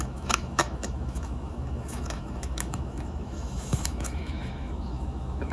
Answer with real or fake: fake